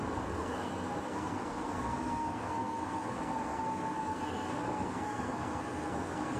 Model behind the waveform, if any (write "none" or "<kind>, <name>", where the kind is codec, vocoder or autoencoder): codec, SNAC